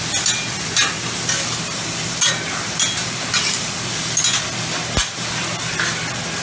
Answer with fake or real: real